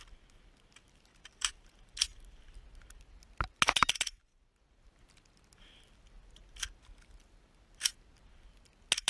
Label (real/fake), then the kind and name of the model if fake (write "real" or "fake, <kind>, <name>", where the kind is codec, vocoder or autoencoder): real